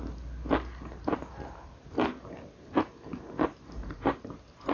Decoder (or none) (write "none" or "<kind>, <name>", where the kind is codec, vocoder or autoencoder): none